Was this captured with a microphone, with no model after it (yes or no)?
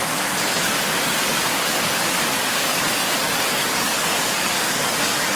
no